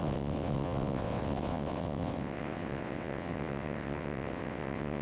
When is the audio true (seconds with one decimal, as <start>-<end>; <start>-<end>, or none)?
none